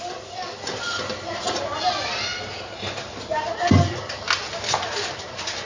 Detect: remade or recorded recorded